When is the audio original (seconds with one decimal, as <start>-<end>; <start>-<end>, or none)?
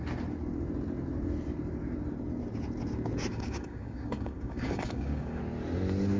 0.0-3.3; 5.4-6.2